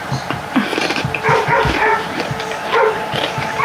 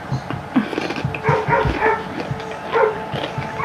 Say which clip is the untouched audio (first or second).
second